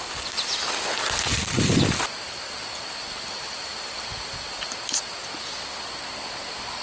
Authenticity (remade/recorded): recorded